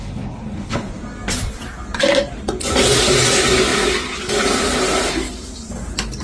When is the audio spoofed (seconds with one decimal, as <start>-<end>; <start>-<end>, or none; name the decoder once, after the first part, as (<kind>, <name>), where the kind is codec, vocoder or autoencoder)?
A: 0.0-0.9 (codec, HILCodec)